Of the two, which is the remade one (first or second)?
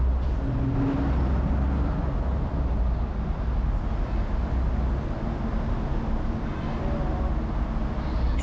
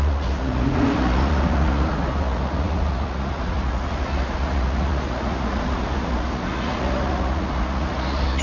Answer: second